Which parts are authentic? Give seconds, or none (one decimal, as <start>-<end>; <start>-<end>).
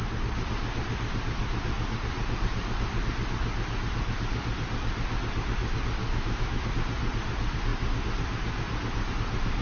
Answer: 0.0-6.0; 6.7-9.6